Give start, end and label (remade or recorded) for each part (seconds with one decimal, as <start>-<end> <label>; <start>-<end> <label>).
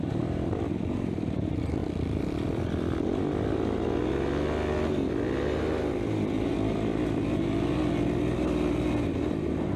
0.0-9.8 recorded